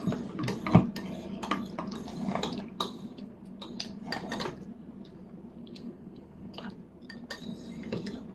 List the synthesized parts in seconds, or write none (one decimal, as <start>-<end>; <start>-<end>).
2.7-3.4; 5.6-6.7